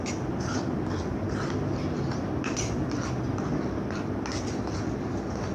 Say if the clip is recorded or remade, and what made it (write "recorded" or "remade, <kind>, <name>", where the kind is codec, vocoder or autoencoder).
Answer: recorded